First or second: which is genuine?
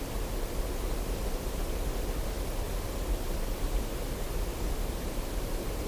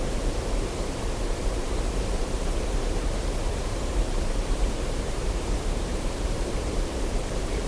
first